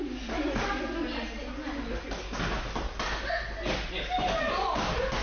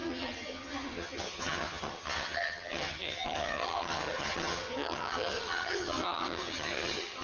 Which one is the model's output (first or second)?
second